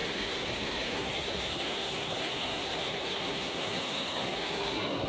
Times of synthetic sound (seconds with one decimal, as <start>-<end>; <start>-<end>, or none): 0.0-5.1